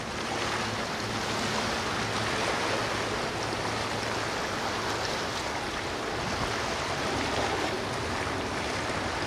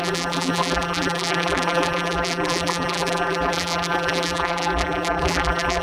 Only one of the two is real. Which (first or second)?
first